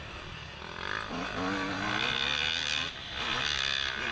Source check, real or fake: real